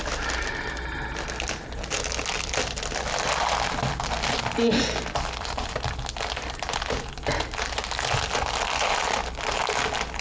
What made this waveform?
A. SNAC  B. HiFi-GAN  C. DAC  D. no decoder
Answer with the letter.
D